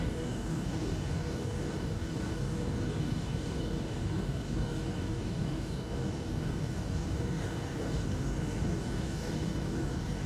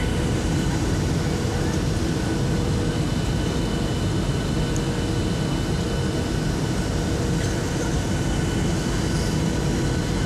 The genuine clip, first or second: second